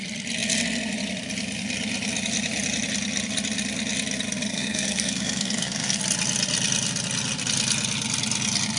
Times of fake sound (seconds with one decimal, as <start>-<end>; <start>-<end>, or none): 4.5-6.0